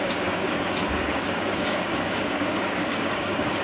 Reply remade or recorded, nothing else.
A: remade